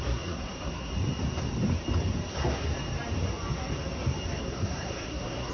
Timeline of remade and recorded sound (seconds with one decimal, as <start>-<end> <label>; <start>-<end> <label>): 0.0-0.9 remade; 0.9-2.3 recorded; 2.3-2.7 remade; 2.7-4.4 recorded; 4.4-5.5 remade